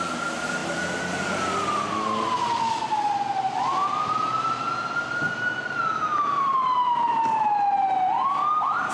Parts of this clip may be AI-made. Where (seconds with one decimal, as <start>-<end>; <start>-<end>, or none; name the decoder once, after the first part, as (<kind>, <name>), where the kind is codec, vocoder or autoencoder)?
none